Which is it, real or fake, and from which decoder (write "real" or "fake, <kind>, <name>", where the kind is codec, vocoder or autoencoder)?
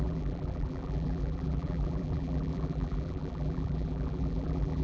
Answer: fake, vocoder, BigVGAN v2